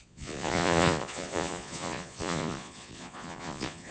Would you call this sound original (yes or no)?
no